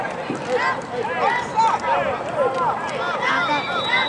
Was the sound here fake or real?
real